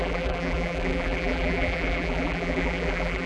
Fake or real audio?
fake